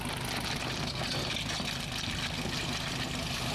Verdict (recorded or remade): recorded